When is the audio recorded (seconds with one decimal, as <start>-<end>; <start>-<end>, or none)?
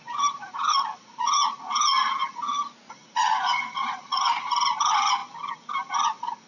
5.2-5.9